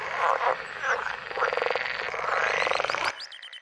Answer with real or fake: fake